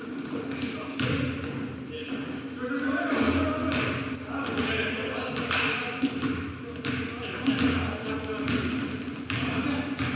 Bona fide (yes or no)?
yes